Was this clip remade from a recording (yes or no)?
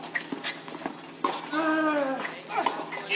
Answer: no